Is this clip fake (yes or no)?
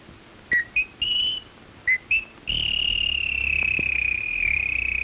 no